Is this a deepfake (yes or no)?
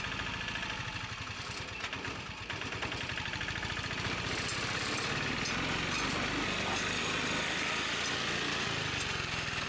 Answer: no